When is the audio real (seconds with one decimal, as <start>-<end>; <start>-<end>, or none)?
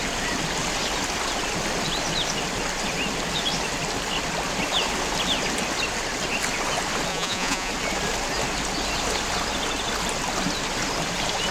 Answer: 0.0-7.1; 7.7-11.5